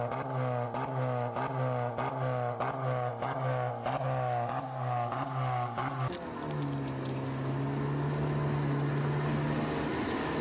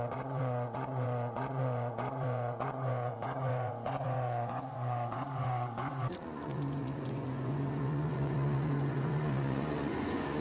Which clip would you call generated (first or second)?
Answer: second